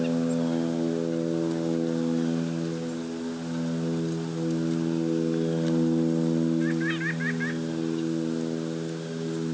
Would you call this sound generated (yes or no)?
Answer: no